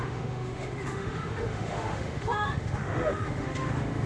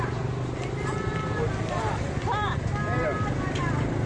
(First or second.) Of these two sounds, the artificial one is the first